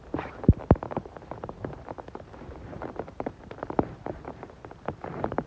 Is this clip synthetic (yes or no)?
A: yes